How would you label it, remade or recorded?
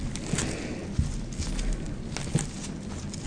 recorded